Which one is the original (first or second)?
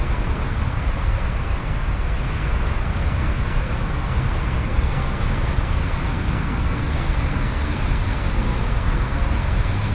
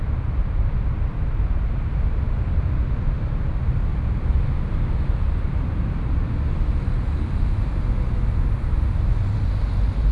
second